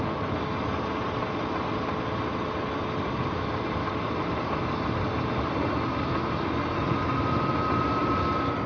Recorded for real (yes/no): yes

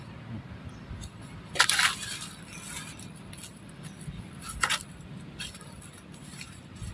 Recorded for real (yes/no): yes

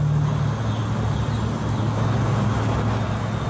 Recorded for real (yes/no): yes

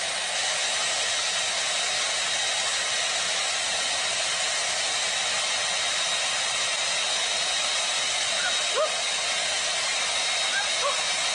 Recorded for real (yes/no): yes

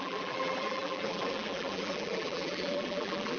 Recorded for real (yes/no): no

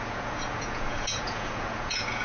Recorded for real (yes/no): no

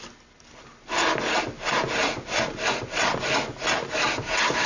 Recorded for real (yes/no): yes